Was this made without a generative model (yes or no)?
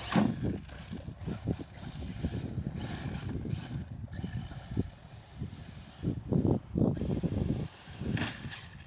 yes